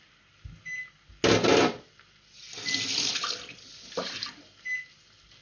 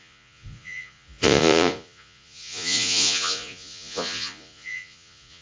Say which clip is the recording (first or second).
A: first